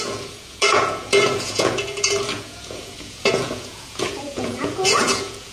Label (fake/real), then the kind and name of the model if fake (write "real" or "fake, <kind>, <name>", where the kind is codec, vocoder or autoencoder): fake, vocoder, Vocos